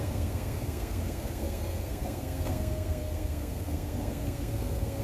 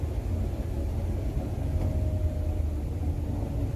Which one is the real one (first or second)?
second